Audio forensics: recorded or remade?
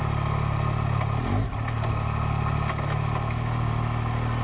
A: recorded